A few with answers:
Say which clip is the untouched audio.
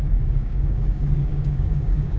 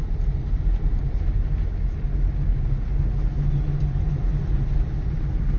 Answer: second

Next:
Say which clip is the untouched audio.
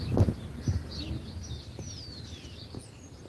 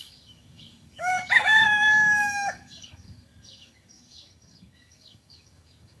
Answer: first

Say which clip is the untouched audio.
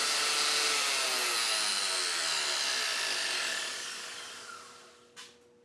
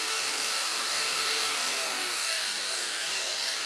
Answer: first